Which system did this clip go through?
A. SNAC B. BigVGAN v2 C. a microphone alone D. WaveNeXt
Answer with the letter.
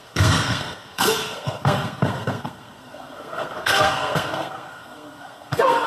A